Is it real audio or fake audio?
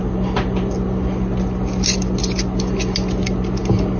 real